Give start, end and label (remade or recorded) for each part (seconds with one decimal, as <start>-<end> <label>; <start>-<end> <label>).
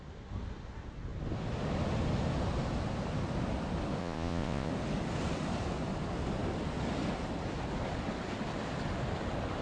0.0-4.0 recorded; 4.0-4.7 remade; 4.7-9.6 recorded